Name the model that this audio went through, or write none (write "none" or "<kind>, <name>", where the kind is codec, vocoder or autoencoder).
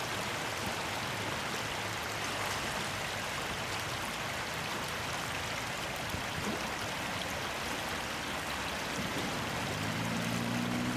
none